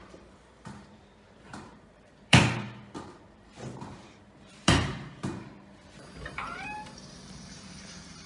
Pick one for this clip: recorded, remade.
remade